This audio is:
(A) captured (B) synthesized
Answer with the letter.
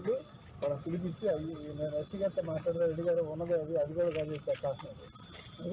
A